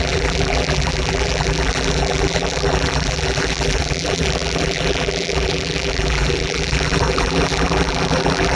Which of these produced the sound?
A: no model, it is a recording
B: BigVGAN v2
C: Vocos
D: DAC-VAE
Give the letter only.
B